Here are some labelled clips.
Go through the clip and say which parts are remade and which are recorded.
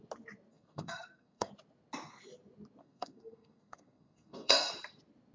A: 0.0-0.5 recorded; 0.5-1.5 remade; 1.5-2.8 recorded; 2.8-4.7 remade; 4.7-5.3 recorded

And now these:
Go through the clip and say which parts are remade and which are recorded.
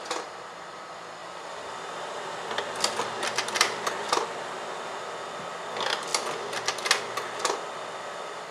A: 0.0-1.2 recorded; 1.2-4.1 remade; 4.1-8.5 recorded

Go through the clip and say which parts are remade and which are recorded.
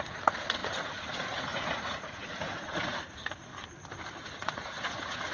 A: 0.0-3.5 remade; 3.5-4.2 recorded; 4.2-5.3 remade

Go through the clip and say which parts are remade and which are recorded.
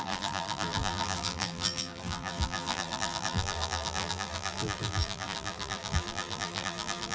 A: 0.0-7.1 remade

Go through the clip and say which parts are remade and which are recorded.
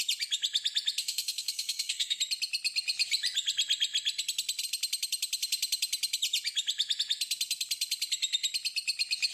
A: 0.0-1.0 recorded; 1.0-2.2 remade; 2.2-9.3 recorded